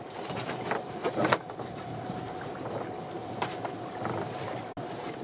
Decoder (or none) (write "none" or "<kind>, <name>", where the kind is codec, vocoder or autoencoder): none